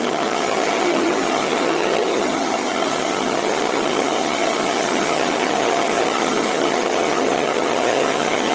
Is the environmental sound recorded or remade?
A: remade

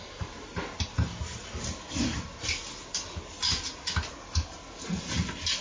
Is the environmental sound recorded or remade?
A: recorded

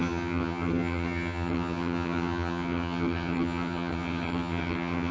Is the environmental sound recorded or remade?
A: remade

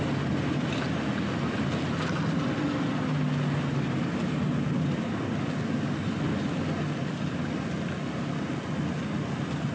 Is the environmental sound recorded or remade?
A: recorded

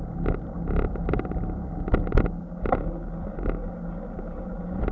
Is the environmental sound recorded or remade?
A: recorded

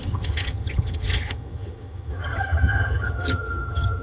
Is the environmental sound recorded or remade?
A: remade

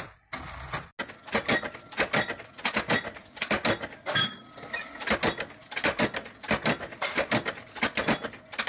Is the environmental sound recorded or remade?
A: recorded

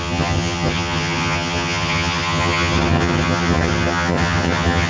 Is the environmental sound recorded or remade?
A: remade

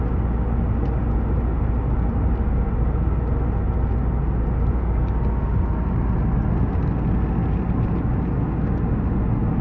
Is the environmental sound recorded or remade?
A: recorded